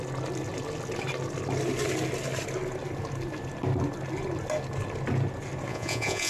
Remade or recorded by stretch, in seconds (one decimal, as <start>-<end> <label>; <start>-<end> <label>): 0.0-5.7 recorded; 5.7-6.3 remade